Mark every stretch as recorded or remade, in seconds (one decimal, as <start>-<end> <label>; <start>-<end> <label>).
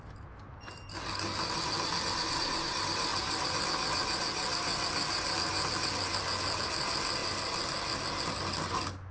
0.0-9.1 recorded